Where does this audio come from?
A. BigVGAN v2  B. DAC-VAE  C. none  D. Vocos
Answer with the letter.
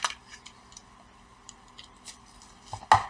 C